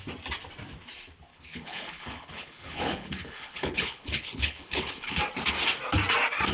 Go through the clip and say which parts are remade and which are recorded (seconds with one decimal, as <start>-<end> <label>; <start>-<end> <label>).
0.0-1.3 recorded; 1.3-5.2 remade; 5.2-6.5 recorded